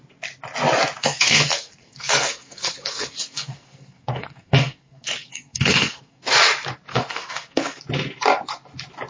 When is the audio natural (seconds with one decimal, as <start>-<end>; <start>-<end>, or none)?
0.0-1.0; 6.2-6.9; 7.8-9.1